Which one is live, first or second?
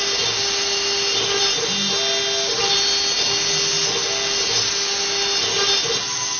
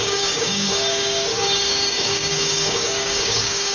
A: first